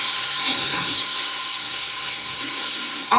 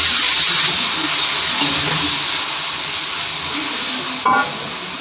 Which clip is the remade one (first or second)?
first